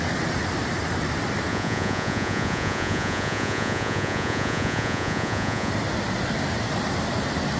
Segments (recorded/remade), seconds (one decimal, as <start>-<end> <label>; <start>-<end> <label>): 0.0-1.5 recorded; 1.5-5.7 remade; 5.7-7.6 recorded